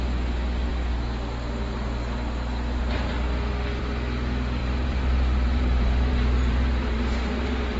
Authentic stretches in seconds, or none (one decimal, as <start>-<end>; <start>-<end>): 0.0-4.6